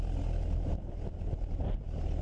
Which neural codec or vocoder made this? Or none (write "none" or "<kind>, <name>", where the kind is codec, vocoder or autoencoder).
none